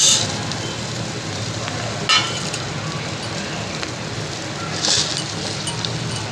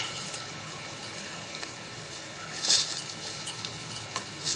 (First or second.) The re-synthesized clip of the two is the second